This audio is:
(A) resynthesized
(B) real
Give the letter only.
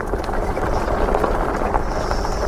B